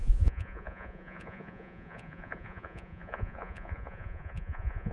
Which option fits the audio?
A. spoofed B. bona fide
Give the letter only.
A